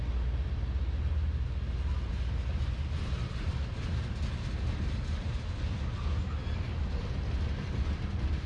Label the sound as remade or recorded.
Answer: recorded